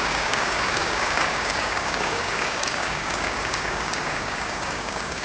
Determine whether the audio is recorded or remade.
remade